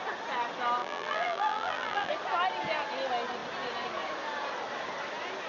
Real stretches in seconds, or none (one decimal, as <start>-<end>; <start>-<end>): 0.0-0.8; 2.1-5.5